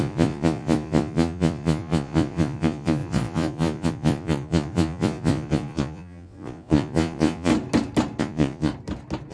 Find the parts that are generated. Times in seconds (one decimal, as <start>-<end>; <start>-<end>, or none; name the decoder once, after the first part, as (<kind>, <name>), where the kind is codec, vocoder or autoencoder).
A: 0.0-7.5 (vocoder, Vocos); 8.2-8.7